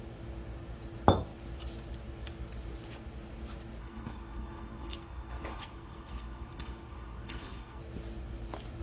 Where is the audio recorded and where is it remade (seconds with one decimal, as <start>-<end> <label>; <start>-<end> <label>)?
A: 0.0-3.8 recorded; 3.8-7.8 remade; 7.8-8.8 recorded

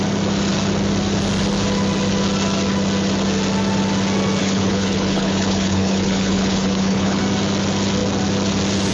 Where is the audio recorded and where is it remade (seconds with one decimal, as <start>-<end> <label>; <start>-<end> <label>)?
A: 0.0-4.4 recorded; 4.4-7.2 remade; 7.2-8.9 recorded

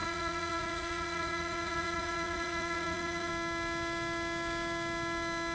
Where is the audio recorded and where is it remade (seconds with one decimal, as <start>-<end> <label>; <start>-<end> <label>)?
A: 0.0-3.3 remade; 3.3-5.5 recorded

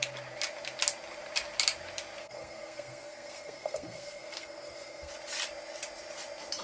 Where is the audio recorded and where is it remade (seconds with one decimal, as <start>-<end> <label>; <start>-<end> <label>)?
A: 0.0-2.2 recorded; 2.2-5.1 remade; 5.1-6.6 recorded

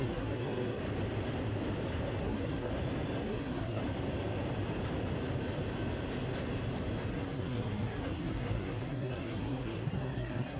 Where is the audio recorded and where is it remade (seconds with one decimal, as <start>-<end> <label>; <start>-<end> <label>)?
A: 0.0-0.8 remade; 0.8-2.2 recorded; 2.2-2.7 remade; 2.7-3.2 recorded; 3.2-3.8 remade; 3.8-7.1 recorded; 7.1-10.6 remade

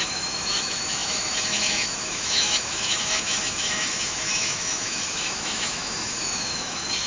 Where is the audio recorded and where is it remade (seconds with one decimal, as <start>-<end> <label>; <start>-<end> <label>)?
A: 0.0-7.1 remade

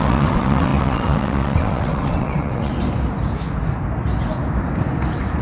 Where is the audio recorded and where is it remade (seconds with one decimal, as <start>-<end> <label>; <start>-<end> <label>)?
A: 0.0-2.7 remade; 2.7-5.4 recorded